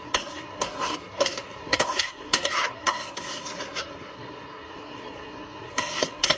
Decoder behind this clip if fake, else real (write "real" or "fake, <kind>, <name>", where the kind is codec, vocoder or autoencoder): fake, codec, SNAC